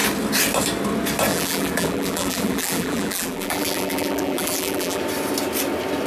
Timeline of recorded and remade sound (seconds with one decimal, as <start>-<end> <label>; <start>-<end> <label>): 0.0-1.3 recorded; 1.3-5.0 remade; 5.0-6.1 recorded